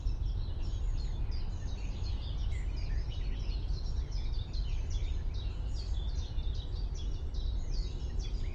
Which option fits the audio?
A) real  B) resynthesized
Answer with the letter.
A